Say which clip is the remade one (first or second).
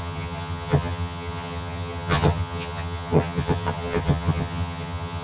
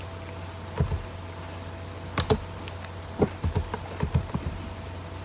first